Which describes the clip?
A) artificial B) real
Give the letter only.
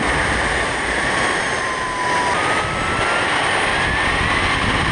B